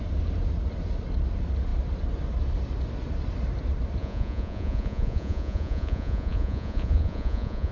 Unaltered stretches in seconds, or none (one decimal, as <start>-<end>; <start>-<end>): 0.0-4.0